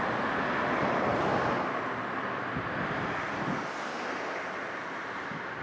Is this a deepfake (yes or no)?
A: no